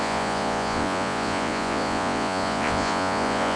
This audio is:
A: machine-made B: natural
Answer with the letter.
A